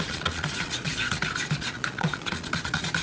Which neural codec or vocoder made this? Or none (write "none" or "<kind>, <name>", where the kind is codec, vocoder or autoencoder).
vocoder, Vocos